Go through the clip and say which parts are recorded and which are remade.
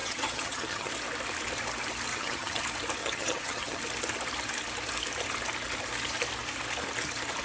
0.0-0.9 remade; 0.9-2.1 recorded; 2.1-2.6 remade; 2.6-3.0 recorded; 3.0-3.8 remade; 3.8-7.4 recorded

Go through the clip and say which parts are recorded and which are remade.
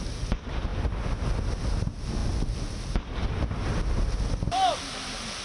0.0-5.4 recorded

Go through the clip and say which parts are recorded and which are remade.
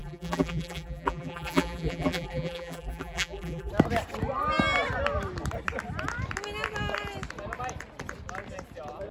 0.0-3.7 remade; 3.7-9.1 recorded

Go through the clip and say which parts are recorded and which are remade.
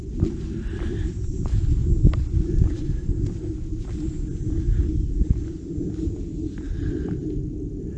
0.0-8.0 recorded